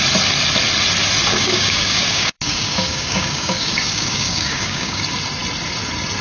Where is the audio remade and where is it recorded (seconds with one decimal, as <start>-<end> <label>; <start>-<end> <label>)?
0.0-1.3 recorded; 1.3-5.0 remade; 5.0-6.2 recorded